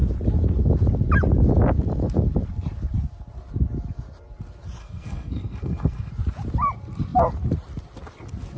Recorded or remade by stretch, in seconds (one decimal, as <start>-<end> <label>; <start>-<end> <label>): 0.0-4.8 recorded; 4.8-6.1 remade; 6.1-8.6 recorded